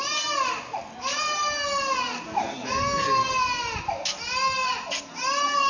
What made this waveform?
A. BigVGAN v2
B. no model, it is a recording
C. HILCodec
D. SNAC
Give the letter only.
B